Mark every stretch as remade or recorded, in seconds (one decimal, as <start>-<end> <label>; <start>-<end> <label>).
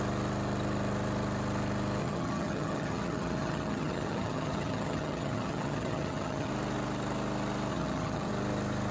0.0-2.0 recorded; 2.0-6.5 remade; 6.5-7.7 recorded; 7.7-8.3 remade; 8.3-8.9 recorded